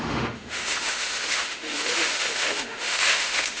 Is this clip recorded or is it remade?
remade